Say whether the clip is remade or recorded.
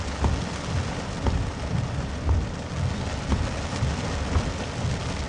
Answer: recorded